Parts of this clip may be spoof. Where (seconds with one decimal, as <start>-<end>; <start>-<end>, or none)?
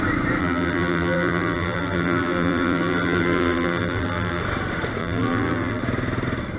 0.4-4.4; 5.0-5.8